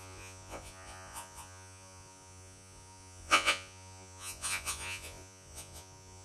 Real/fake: fake